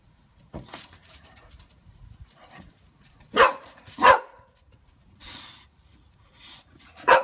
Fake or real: fake